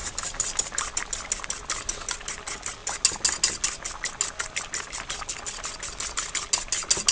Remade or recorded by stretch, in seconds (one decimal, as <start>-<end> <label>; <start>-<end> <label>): 0.0-7.1 recorded